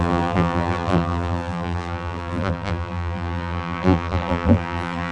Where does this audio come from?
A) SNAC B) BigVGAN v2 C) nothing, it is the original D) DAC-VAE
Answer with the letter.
B